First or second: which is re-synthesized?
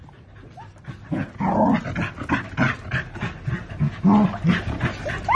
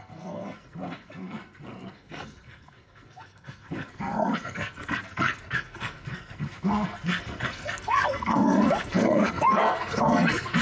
second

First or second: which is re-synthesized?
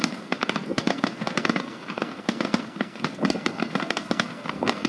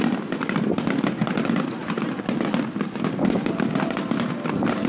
first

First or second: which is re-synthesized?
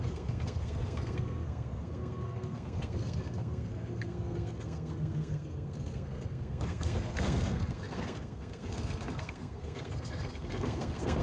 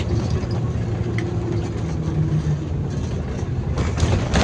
first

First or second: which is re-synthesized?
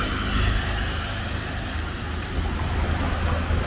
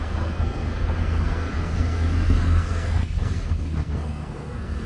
second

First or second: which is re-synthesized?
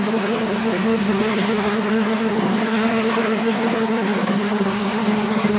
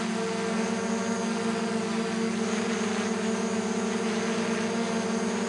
first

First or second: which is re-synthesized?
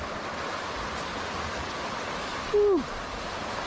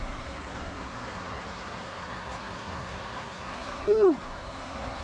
second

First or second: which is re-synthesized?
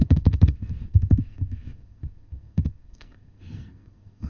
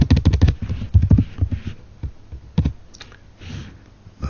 first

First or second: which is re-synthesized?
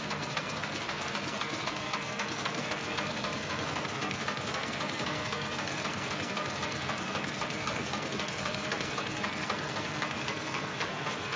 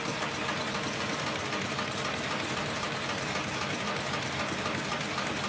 first